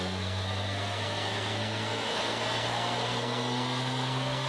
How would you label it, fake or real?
fake